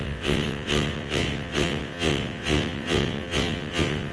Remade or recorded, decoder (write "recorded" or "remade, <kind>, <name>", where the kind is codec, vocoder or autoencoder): remade, vocoder, WaveNeXt